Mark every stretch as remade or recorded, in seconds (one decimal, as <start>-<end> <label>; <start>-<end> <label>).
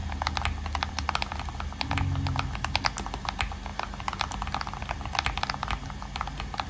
0.0-6.7 recorded